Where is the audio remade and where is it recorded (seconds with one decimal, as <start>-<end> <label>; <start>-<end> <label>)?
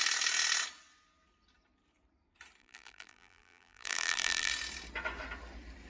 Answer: 0.0-2.6 recorded; 2.6-4.5 remade; 4.5-5.9 recorded